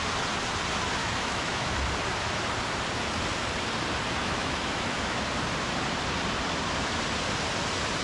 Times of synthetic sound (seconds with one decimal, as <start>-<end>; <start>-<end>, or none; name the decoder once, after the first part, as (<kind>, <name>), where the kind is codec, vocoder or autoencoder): 1.0-1.7 (autoencoder, DAC-VAE); 4.2-5.2